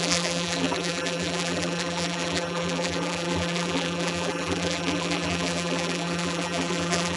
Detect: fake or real fake